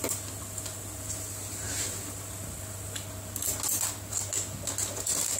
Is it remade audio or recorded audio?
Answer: recorded